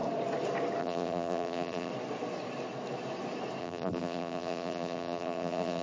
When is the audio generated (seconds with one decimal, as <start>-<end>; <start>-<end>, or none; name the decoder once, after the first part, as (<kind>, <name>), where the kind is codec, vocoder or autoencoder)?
0.8-1.9 (vocoder, BigVGAN v2); 3.6-5.8